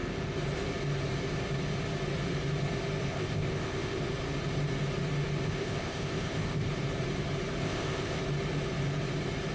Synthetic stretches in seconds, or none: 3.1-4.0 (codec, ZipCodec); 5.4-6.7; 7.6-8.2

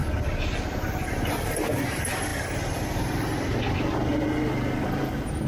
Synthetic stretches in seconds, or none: 0.0-1.1 (vocoder, BigVGAN v2)

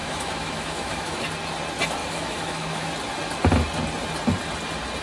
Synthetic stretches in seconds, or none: 0.0-1.2 (autoencoder, DAC-VAE); 2.0-2.9

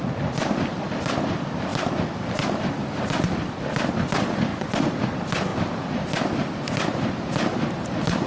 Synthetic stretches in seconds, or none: 0.0-8.3 (vocoder, BigVGAN v2)